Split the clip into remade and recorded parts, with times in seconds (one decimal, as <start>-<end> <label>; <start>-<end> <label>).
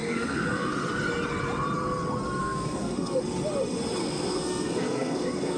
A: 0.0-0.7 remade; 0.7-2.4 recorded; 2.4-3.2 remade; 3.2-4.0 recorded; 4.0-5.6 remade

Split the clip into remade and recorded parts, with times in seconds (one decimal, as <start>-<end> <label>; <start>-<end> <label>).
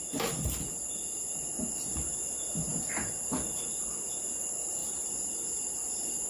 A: 0.0-2.7 recorded; 2.7-3.9 remade; 3.9-4.8 recorded; 4.8-6.3 remade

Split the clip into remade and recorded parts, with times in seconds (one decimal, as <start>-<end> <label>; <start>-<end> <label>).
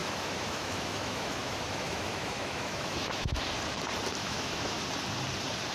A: 0.0-3.4 remade; 3.4-4.2 recorded; 4.2-4.8 remade; 4.8-5.7 recorded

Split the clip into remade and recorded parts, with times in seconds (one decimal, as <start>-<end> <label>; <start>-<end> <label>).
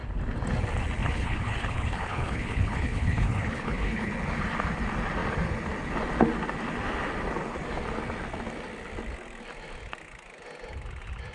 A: 0.0-1.0 recorded; 1.0-4.1 remade; 4.1-11.3 recorded